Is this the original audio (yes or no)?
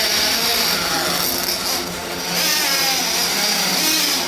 yes